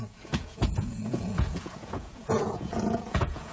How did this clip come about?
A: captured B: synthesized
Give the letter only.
B